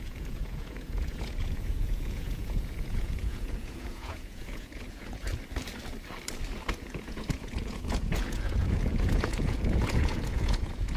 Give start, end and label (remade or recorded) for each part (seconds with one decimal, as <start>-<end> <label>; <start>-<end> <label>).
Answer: 0.0-5.3 remade; 5.3-6.7 recorded; 6.7-11.0 remade